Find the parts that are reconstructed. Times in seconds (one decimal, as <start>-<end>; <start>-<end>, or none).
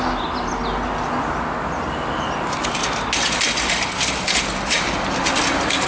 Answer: none